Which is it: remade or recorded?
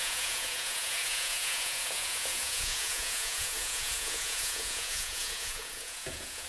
remade